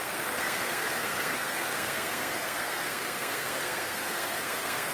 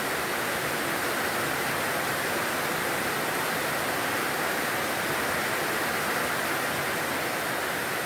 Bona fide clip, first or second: second